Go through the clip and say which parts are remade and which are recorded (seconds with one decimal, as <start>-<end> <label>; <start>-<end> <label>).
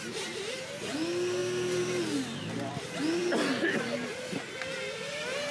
0.0-1.4 recorded; 1.4-2.7 remade; 2.7-5.5 recorded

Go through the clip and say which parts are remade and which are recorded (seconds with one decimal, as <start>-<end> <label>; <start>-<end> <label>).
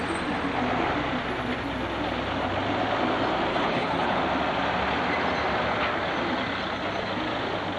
0.0-3.5 recorded; 3.5-4.2 remade; 4.2-7.8 recorded